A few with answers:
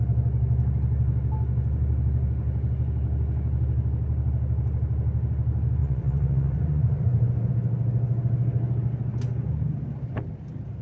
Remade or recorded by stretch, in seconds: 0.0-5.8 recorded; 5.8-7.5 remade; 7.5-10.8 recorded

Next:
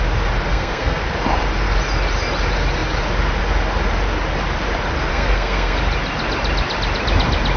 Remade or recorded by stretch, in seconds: 0.0-0.5 recorded; 0.5-1.0 remade; 1.0-5.1 recorded; 5.1-5.8 remade; 5.8-7.6 recorded

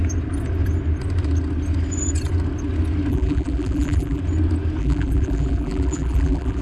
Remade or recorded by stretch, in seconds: 0.0-3.1 recorded; 3.1-4.2 remade; 4.2-4.8 recorded; 4.8-6.6 remade

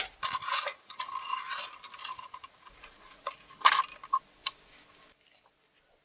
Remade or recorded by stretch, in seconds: 0.0-0.4 recorded; 0.4-1.1 remade; 1.1-2.0 recorded; 2.0-3.5 remade; 3.5-6.0 recorded